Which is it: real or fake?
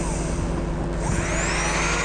real